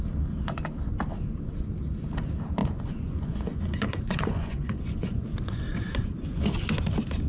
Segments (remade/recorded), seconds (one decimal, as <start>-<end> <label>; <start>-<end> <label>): 0.0-2.6 recorded; 2.6-6.4 remade; 6.4-7.3 recorded